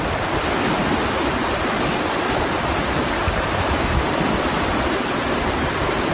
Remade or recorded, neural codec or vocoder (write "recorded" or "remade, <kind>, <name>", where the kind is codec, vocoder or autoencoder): recorded